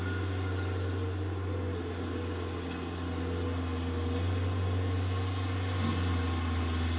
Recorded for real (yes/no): yes